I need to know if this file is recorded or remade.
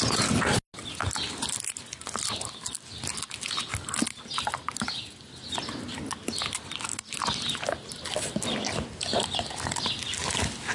recorded